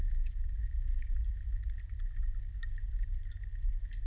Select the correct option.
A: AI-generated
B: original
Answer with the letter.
B